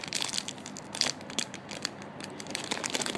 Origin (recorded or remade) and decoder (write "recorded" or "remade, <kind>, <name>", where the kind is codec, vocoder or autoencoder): recorded